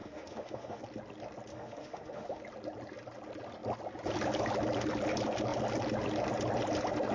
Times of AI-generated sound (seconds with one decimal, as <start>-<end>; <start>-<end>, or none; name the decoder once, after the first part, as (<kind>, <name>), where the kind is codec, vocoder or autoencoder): 0.0-0.8 (autoencoder, DAC-VAE); 1.5-2.4